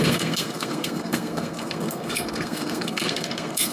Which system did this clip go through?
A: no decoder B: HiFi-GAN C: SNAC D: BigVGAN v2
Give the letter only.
C